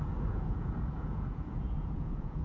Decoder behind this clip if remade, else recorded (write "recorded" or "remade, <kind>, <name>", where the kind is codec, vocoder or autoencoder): remade, vocoder, Vocos